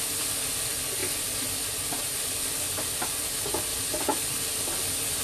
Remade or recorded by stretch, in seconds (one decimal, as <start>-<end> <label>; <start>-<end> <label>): 0.0-5.2 remade